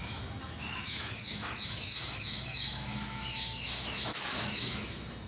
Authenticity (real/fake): fake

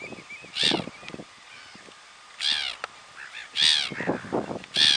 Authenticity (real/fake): real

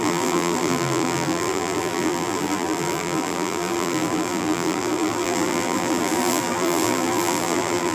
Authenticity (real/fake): fake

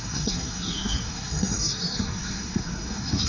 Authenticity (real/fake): fake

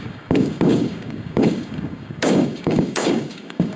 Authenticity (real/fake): fake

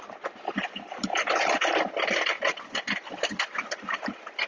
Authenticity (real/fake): real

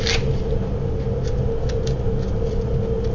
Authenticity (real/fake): real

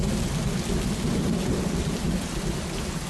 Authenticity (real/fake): real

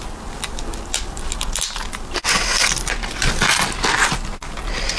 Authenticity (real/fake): real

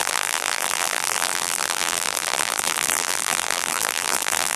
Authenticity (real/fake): fake